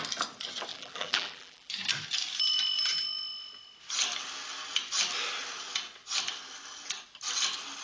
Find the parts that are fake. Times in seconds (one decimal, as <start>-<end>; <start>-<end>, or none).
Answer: 0.7-1.7